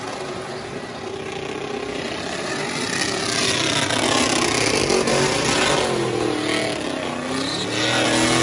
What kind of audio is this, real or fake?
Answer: real